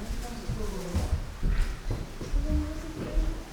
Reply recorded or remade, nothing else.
recorded